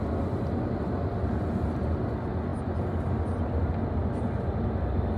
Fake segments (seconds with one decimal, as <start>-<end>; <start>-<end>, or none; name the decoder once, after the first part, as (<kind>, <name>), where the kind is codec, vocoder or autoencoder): none